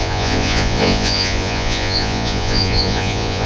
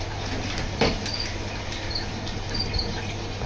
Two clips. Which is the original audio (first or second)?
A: second